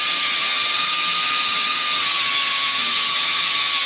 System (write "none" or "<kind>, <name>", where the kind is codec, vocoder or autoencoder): vocoder, HiFi-GAN